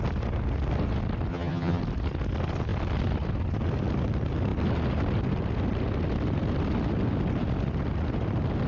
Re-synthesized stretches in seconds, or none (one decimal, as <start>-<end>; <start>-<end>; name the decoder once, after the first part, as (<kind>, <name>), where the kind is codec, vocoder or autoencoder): 1.3-1.8 (vocoder, HiFi-GAN)